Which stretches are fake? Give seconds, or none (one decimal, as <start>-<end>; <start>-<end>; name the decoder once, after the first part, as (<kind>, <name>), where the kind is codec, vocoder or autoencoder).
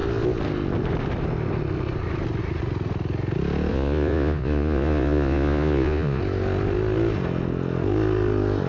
3.7-6.2 (vocoder, Vocos)